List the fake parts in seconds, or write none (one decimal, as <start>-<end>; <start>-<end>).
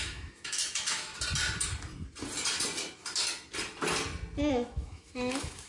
0.0-1.1; 4.5-5.7